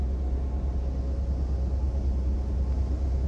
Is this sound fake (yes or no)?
no